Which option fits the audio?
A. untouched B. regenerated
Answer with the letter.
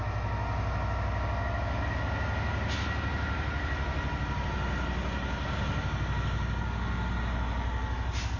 A